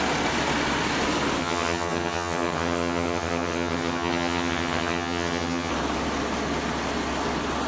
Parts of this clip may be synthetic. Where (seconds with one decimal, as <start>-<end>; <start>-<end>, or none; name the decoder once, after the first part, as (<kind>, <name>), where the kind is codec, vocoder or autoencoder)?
1.4-5.7 (vocoder, HiFi-GAN)